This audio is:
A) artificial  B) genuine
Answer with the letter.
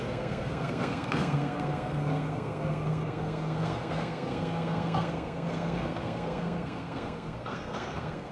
A